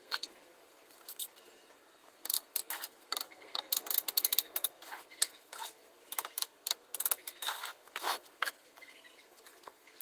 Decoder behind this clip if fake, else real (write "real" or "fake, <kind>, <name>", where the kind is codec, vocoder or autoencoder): fake, codec, SNAC